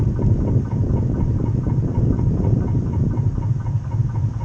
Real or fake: real